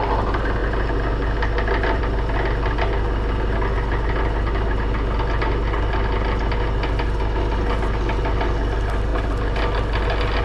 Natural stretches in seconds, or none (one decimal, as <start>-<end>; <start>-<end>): 0.0-10.4